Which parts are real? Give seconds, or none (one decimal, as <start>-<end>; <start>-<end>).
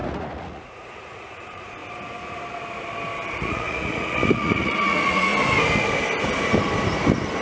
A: 1.8-3.3; 5.3-7.4